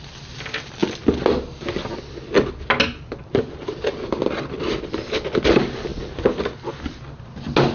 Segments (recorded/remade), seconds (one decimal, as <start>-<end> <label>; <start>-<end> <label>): 0.0-7.7 recorded